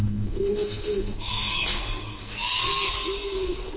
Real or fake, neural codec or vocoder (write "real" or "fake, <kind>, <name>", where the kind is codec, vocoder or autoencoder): fake, codec, SNAC